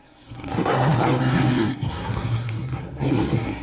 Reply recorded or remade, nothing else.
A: remade